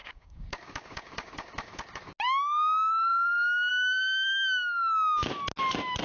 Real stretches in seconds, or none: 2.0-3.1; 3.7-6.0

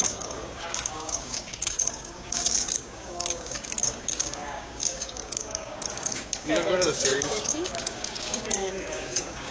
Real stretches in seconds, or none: none